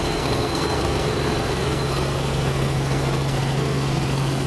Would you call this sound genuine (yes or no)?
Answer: no